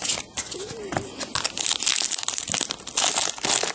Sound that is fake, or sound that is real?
real